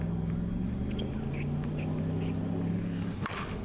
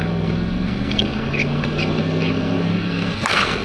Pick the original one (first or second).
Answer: first